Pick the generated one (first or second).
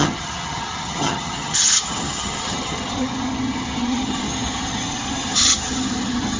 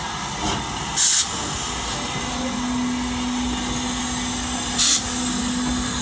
first